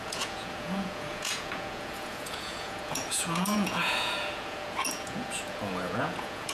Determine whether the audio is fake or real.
fake